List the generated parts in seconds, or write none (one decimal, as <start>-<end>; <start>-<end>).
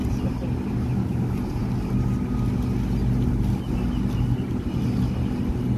none